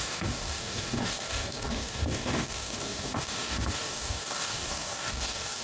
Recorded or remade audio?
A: remade